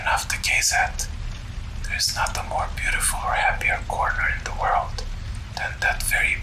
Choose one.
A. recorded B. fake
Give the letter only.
A